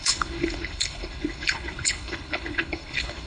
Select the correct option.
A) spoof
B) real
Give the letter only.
A